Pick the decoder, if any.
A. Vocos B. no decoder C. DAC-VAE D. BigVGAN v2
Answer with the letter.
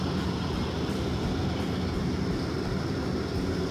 B